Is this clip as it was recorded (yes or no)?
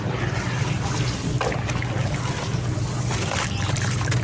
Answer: yes